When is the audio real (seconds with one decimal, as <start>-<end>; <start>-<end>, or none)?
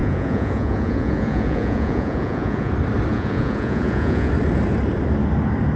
2.7-3.1; 4.3-5.8